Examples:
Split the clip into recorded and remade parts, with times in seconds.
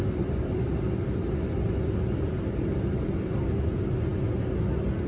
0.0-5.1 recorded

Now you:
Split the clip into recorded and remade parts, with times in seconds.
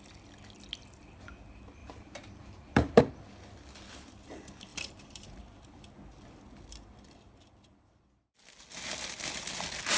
0.0-1.8 recorded; 1.8-3.0 remade; 3.0-4.7 recorded; 4.7-5.4 remade; 5.4-10.0 recorded